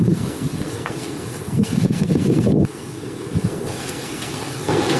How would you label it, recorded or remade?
remade